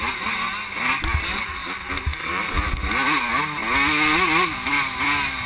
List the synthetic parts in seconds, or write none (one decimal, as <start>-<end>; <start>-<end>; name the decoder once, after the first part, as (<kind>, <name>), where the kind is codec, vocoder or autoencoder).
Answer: 1.6-2.8 (vocoder, BigVGAN v2)